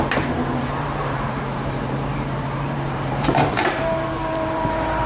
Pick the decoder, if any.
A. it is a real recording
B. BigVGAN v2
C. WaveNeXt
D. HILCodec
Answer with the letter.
B